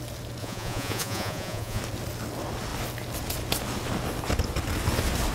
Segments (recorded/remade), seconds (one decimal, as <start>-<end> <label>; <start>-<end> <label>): 0.0-0.4 recorded; 0.4-1.8 remade; 1.8-5.3 recorded